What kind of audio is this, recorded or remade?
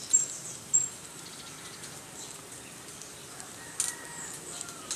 recorded